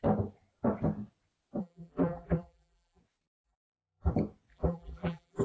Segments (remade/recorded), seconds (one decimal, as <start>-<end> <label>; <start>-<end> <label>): 0.0-1.6 recorded; 1.6-3.0 remade; 3.0-3.4 recorded; 3.4-4.1 remade; 4.1-4.5 recorded; 4.5-5.4 remade